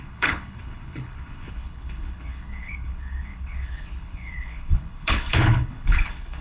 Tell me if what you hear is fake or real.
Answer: fake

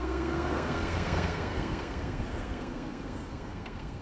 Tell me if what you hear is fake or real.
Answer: fake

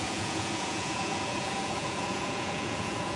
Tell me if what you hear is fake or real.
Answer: fake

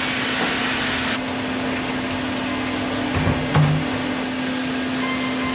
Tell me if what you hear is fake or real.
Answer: real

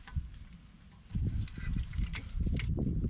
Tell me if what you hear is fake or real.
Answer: fake